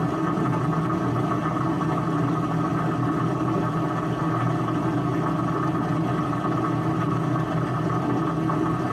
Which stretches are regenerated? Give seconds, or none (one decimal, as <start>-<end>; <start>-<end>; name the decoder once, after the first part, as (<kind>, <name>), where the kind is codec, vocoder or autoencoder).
none